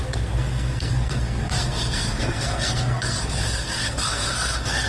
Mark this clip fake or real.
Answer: fake